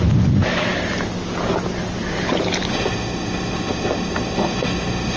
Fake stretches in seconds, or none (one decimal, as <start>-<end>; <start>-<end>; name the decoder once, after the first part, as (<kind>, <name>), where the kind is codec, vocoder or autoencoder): 2.7-5.2 (autoencoder, DAC-VAE)